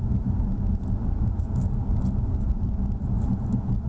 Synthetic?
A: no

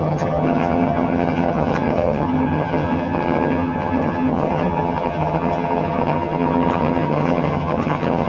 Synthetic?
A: yes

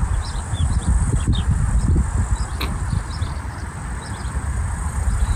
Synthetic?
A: yes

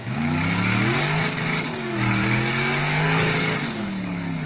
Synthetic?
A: yes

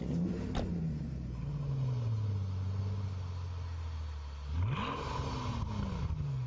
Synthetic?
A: no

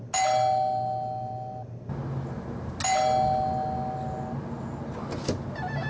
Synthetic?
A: no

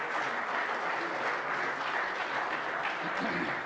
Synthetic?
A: no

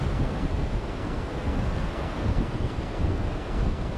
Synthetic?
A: yes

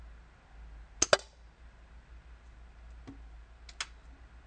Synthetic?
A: no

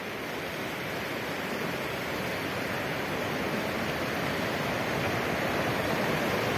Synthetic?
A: no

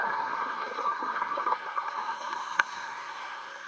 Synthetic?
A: yes